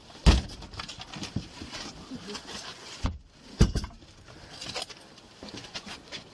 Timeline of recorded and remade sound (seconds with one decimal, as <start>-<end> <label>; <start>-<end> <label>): 0.0-2.7 recorded; 2.7-3.2 remade; 3.2-5.6 recorded; 5.6-6.3 remade